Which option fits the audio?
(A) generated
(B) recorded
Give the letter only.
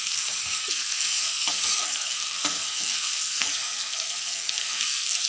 A